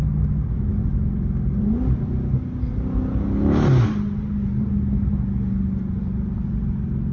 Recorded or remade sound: recorded